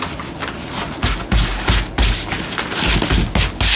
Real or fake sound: real